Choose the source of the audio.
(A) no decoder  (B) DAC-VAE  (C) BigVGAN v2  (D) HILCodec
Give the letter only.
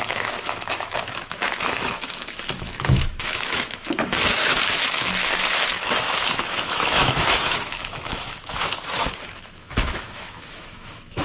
B